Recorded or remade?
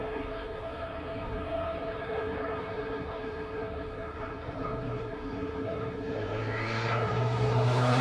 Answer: remade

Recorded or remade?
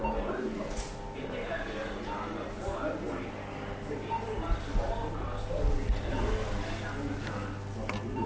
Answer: recorded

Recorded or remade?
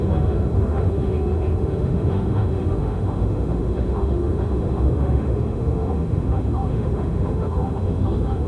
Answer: remade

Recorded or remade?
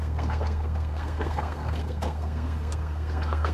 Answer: remade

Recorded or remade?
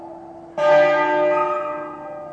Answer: recorded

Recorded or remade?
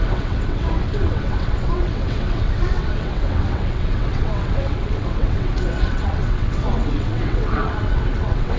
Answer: remade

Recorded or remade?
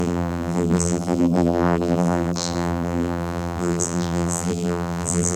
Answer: remade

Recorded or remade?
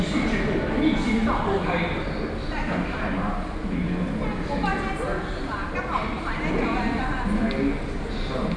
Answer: recorded